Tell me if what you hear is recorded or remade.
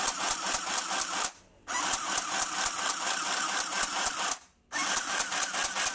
recorded